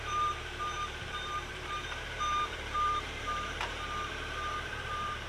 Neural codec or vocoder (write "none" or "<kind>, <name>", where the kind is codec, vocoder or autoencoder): vocoder, BigVGAN v2